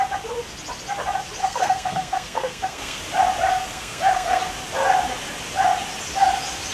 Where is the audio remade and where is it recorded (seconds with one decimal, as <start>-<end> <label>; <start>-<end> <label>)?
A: 0.0-1.4 recorded; 1.4-3.0 remade; 3.0-3.5 recorded; 3.5-4.4 remade; 4.4-6.7 recorded